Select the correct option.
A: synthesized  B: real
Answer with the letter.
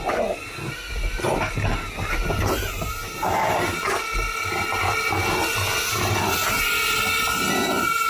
B